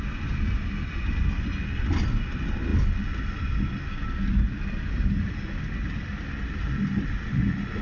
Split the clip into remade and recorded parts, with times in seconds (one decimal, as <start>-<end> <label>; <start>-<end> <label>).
0.0-7.8 recorded